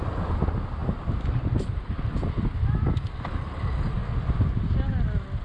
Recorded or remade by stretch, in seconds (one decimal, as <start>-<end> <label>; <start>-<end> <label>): 0.0-5.4 recorded